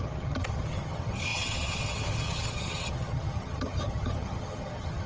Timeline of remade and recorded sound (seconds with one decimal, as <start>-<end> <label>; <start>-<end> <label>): 0.0-5.1 remade